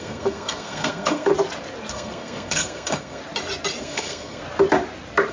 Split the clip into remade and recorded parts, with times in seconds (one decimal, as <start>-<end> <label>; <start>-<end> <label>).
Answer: 0.0-1.3 remade; 1.3-1.9 recorded; 1.9-3.2 remade; 3.2-3.8 recorded; 3.8-4.4 remade; 4.4-5.3 recorded